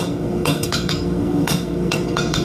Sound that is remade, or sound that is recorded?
remade